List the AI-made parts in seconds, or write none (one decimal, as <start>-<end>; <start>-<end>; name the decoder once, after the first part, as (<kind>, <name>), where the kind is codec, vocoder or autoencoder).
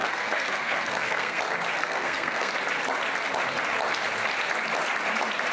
0.0-1.4 (codec, SNAC); 1.8-2.5